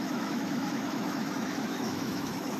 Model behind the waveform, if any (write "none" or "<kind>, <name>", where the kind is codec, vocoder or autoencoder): autoencoder, DAC-VAE